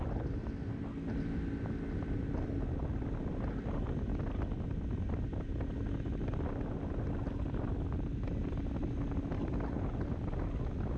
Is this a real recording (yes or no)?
yes